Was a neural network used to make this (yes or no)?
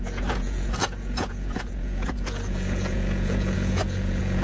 yes